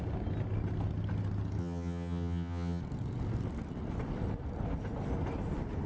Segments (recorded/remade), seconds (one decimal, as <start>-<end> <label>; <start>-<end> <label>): 0.0-1.6 recorded; 1.6-2.8 remade; 2.8-5.9 recorded

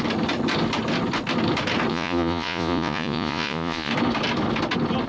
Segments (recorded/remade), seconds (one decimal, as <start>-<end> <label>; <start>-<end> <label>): 0.0-1.9 recorded; 1.9-3.9 remade; 3.9-5.1 recorded

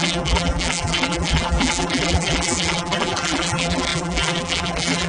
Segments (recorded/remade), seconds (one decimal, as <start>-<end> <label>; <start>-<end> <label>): 0.0-5.1 remade

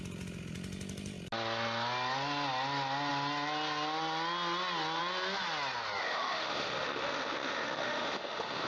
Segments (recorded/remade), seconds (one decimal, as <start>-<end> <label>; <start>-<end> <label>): 0.0-6.0 recorded; 6.0-8.7 remade

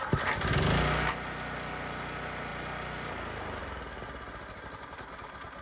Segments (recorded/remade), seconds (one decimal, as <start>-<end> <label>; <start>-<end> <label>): 0.0-5.6 recorded

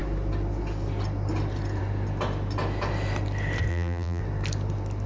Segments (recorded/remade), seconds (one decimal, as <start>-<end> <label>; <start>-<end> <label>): 0.0-3.7 recorded; 3.7-4.2 remade; 4.2-5.1 recorded

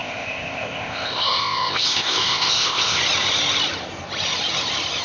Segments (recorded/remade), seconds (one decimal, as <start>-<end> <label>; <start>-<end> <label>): 0.0-3.0 remade; 3.0-5.0 recorded

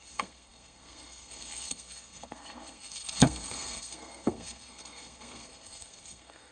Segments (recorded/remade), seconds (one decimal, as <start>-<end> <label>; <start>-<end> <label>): 0.0-6.5 remade